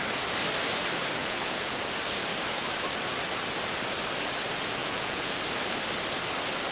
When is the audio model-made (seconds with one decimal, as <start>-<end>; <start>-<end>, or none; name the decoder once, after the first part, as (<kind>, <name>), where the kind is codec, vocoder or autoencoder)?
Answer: 1.2-1.8 (vocoder, Vocos); 4.8-5.4